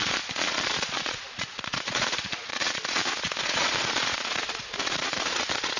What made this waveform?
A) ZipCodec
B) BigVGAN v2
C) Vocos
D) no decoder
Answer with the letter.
C